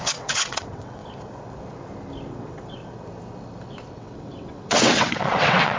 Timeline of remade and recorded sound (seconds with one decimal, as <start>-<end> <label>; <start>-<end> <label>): 0.0-1.0 remade; 1.0-2.3 recorded; 2.3-2.8 remade; 2.8-3.9 recorded; 3.9-5.8 remade